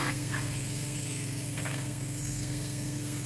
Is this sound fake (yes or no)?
yes